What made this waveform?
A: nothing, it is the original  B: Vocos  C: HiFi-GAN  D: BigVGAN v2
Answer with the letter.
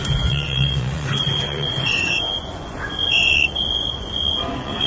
B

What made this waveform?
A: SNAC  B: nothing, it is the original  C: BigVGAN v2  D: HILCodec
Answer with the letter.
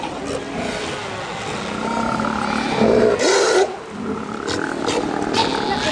B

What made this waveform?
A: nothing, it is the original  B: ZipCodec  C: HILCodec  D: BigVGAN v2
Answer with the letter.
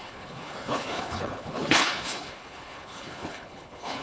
C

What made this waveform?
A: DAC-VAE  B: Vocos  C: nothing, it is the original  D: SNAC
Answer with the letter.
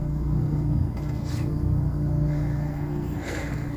D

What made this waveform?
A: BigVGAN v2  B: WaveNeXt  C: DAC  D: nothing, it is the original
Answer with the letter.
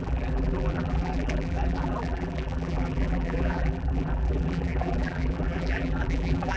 A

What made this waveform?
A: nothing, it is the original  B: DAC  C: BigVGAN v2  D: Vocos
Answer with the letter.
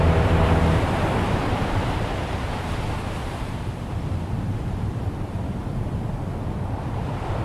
C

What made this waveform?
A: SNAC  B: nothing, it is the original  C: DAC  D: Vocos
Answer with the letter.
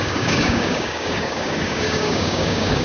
C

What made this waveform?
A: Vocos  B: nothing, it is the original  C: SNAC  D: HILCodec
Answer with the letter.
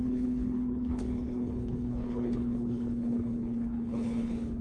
D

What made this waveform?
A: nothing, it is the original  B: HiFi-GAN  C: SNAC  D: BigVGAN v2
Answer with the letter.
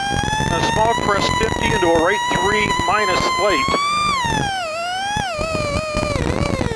A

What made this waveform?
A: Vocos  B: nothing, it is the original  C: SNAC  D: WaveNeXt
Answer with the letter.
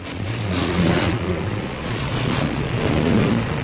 A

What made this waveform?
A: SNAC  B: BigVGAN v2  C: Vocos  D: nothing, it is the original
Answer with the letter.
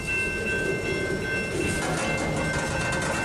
D